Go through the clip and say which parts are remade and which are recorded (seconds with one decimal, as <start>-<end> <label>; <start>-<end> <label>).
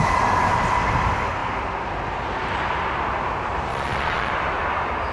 0.0-3.7 recorded; 3.7-4.3 remade; 4.3-5.1 recorded